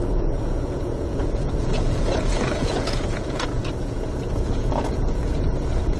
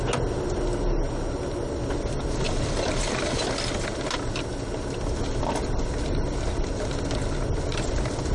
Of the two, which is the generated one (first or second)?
first